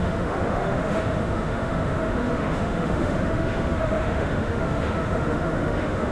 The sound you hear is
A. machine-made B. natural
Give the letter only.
A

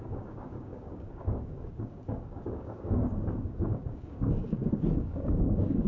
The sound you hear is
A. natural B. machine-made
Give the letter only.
B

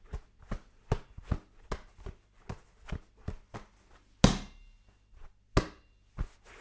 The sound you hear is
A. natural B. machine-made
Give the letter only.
A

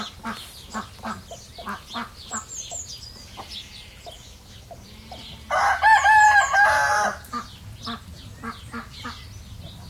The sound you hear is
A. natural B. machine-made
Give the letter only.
A